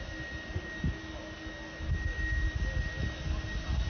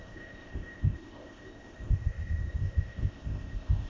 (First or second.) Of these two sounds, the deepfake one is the second